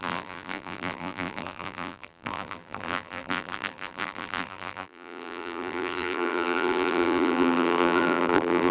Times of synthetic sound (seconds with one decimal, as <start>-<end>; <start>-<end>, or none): 0.0-8.7